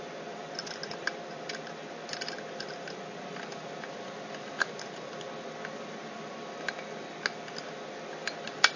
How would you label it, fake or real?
real